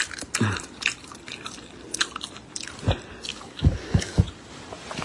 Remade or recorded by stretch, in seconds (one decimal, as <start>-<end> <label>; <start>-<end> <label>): 0.0-3.3 recorded; 3.3-4.2 remade; 4.2-5.0 recorded